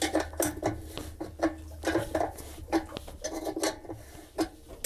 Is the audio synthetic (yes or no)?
no